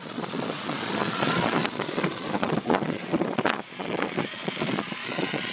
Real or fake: fake